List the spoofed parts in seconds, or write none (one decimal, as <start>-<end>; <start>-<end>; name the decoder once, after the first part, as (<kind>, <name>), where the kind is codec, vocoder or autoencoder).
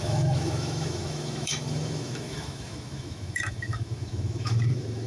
0.0-5.1 (autoencoder, DAC-VAE)